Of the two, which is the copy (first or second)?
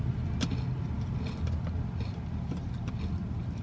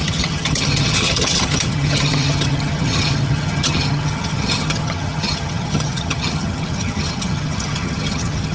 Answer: second